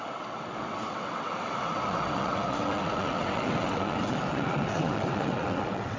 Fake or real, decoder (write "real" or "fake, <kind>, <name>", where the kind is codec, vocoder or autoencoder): fake, vocoder, WaveNeXt